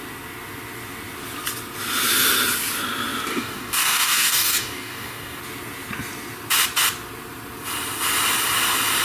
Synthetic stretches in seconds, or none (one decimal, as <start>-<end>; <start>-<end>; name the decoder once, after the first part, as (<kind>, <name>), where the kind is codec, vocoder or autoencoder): 3.3-5.4 (codec, DAC)